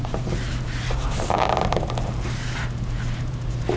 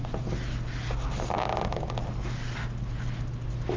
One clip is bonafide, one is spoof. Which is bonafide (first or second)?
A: second